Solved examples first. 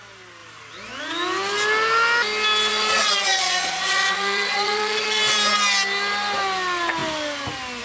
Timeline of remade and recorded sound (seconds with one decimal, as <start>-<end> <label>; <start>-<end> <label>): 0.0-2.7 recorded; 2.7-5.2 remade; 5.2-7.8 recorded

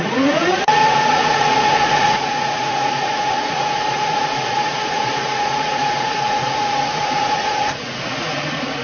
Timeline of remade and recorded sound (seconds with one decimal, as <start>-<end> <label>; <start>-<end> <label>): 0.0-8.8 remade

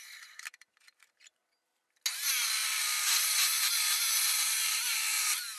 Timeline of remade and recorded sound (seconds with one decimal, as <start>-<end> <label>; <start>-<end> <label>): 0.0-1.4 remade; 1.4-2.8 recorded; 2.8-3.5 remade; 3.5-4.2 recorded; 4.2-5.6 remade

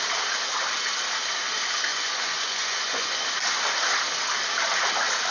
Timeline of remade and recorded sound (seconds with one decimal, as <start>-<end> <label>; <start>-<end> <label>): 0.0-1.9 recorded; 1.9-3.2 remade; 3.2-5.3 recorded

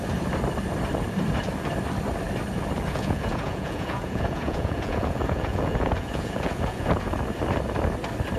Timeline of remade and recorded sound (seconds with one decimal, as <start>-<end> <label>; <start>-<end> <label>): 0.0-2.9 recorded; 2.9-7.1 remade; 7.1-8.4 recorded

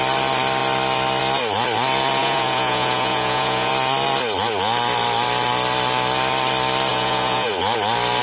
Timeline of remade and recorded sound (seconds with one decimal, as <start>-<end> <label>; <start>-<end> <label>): 0.0-2.2 recorded; 2.2-3.7 remade; 3.7-6.9 recorded; 6.9-7.5 remade; 7.5-8.2 recorded

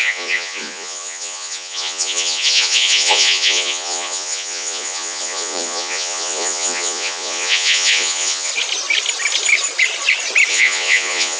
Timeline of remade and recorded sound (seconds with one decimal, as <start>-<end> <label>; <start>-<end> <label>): 0.0-8.5 remade; 8.5-10.5 recorded; 10.5-11.4 remade

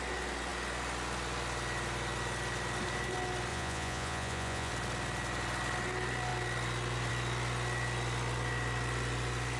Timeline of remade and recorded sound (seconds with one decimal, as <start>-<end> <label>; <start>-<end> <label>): 0.0-3.5 recorded; 3.5-4.7 remade; 4.7-9.6 recorded